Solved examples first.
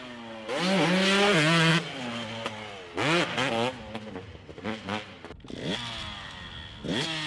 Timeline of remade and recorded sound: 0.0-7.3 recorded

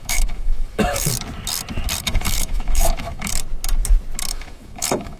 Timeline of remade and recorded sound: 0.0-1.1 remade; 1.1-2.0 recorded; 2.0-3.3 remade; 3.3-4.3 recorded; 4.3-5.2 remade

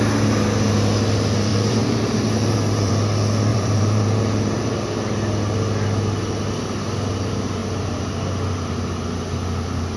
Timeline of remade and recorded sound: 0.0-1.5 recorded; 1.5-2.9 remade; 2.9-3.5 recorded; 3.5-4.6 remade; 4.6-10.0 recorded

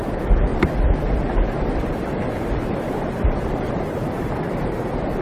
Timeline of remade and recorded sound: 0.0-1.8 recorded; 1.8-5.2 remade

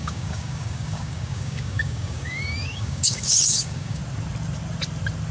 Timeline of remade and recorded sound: 0.0-4.0 remade; 4.0-5.3 recorded

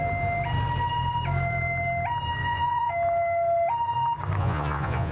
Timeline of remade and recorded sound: 0.0-2.4 recorded; 2.4-2.9 remade; 2.9-4.4 recorded; 4.4-5.1 remade